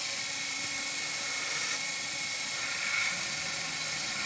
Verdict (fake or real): fake